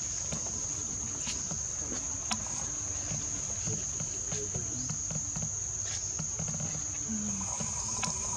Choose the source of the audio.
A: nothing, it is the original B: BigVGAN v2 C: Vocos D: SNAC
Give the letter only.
A